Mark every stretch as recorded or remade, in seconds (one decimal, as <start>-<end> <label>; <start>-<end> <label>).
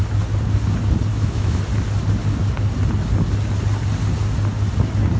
0.0-1.1 recorded; 1.1-1.6 remade; 1.6-5.2 recorded